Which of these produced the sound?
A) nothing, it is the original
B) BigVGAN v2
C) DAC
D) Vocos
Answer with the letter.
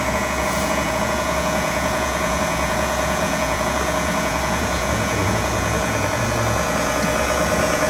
D